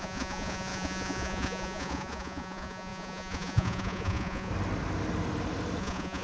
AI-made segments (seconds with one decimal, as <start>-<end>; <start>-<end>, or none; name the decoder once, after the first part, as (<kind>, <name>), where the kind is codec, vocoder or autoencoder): 0.0-4.5 (vocoder, Vocos); 5.8-6.2